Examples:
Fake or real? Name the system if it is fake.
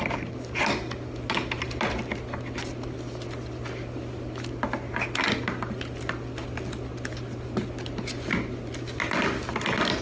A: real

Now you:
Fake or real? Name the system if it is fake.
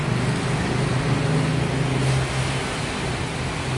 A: real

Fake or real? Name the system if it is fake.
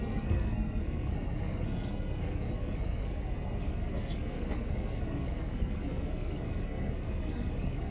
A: fake, codec, SNAC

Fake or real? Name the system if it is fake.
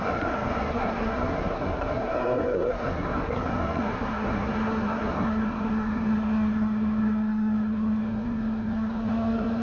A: fake, codec, SNAC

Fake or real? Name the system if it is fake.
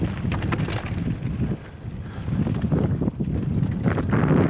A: real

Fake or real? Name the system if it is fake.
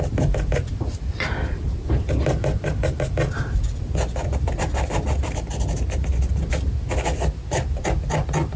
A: real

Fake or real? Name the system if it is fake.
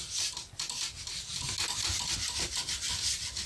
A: real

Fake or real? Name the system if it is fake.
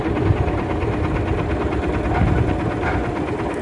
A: real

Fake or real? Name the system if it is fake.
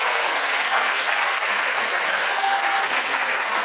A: fake, codec, SNAC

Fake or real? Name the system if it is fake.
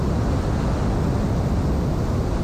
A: real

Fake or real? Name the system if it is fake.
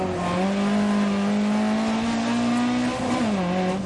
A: real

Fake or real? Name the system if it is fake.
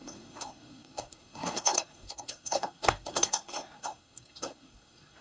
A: fake, codec, SNAC